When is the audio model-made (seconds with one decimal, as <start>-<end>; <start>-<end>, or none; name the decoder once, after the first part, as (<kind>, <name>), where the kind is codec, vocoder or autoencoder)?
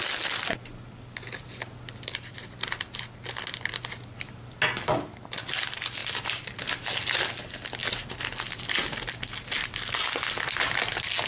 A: none